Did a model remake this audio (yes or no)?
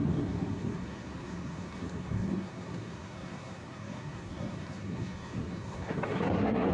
yes